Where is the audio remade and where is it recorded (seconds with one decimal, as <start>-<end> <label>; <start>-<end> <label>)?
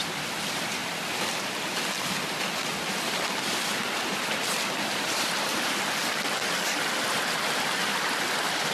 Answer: 0.0-0.8 remade; 0.8-4.8 recorded; 4.8-7.9 remade; 7.9-8.7 recorded